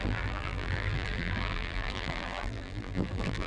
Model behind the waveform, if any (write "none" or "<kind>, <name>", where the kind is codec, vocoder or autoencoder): vocoder, BigVGAN v2